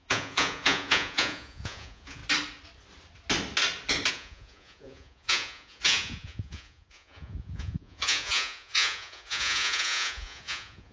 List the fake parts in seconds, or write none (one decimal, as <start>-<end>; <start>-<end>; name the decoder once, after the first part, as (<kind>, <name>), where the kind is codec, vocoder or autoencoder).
0.0-2.2 (vocoder, Vocos); 4.1-10.9